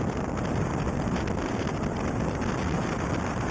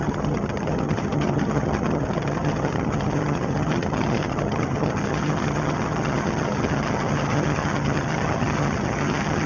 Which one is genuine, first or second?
first